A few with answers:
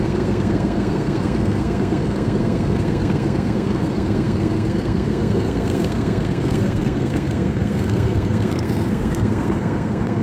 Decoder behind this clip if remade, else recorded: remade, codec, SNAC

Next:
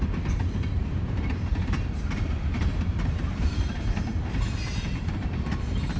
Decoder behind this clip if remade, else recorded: remade, vocoder, BigVGAN v2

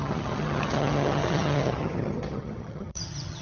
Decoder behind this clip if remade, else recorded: remade, vocoder, HiFi-GAN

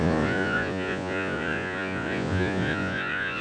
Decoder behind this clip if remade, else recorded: remade, vocoder, Vocos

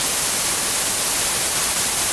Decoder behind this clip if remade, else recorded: recorded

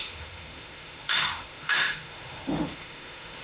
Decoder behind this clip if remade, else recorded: remade, autoencoder, DAC-VAE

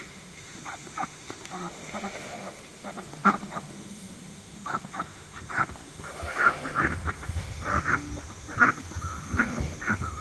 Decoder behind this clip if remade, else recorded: remade, autoencoder, DAC-VAE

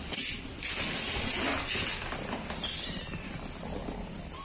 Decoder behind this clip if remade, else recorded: recorded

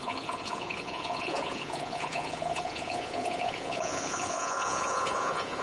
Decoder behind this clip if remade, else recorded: remade, vocoder, Vocos